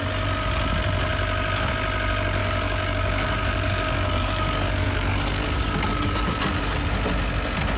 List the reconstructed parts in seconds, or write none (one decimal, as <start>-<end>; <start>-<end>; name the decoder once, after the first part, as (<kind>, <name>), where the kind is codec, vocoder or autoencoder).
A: 2.4-6.4 (codec, DAC)